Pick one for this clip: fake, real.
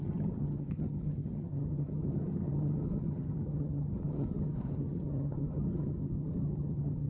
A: fake